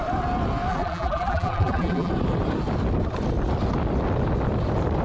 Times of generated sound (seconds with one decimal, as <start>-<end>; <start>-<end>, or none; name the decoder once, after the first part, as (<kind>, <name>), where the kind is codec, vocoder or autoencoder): 0.7-2.1 (vocoder, BigVGAN v2)